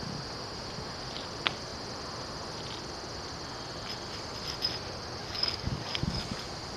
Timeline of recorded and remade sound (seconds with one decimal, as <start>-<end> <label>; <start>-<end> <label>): 0.0-5.2 recorded; 5.2-6.0 remade; 6.0-6.8 recorded